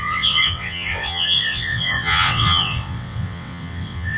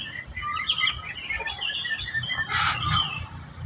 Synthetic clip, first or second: first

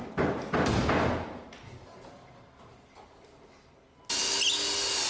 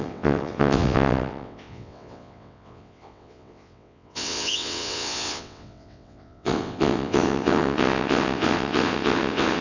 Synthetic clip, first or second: second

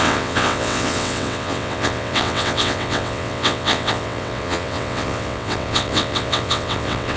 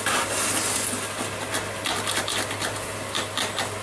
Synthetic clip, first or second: first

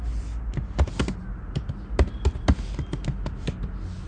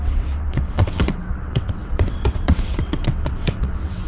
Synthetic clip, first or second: second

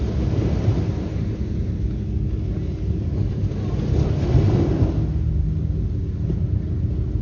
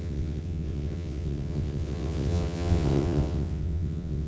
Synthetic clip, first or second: second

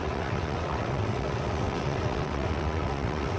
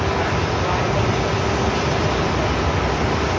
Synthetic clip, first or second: first